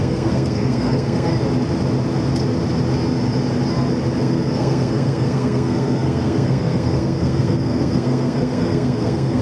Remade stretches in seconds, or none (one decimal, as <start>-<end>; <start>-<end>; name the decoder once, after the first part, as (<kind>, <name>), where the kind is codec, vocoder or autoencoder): 0.0-1.3 (codec, SNAC); 4.2-9.4